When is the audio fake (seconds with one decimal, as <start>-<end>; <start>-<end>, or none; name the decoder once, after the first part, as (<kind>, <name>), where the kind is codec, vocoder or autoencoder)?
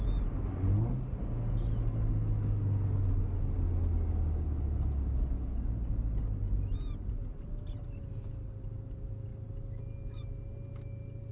none